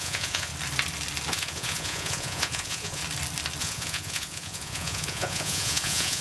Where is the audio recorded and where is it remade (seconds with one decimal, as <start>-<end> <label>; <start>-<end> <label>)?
0.0-0.5 remade; 0.5-1.3 recorded; 1.3-3.0 remade; 3.0-3.6 recorded; 3.6-6.2 remade